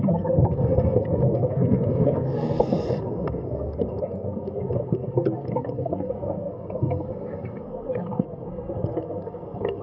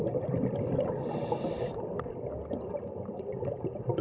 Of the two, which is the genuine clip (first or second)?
second